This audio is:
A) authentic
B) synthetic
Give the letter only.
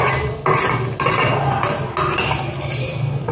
A